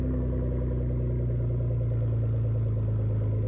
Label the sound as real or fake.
real